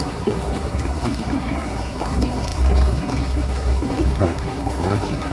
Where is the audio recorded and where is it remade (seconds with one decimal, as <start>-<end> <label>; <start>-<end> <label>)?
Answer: 0.0-5.3 remade